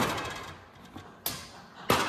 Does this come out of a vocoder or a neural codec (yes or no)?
no